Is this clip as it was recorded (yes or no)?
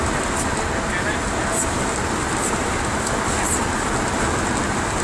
yes